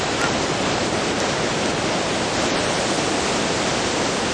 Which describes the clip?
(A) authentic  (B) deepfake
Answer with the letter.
A